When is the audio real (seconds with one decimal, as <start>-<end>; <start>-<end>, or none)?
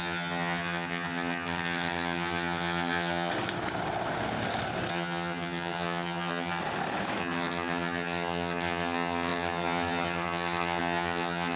3.3-4.9; 6.6-7.2